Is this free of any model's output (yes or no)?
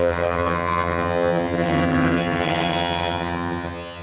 no